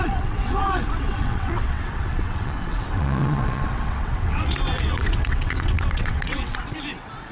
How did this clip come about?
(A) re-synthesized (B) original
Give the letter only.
A